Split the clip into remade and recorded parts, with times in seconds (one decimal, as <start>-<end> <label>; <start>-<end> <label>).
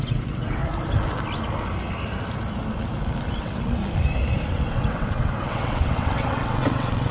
0.0-0.6 remade; 0.6-3.3 recorded; 3.3-3.8 remade; 3.8-4.5 recorded; 4.5-7.1 remade